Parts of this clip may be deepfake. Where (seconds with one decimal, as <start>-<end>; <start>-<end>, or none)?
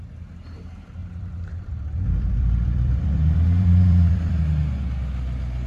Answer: 1.0-4.4